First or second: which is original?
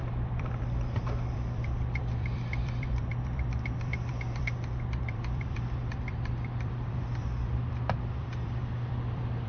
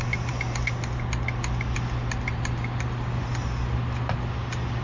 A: second